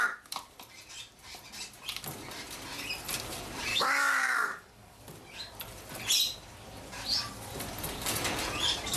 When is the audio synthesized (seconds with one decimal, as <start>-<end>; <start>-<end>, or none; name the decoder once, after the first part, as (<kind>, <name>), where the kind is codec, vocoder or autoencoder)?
3.7-5.0 (codec, DAC)